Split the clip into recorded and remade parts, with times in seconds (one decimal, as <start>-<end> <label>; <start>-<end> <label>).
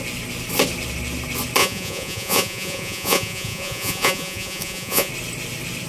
0.0-1.6 recorded; 1.6-5.1 remade; 5.1-5.9 recorded